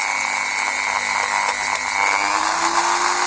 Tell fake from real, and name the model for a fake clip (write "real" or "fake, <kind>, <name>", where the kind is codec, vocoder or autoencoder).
real